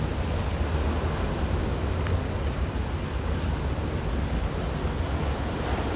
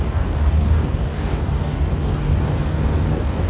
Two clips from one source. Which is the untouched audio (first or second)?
first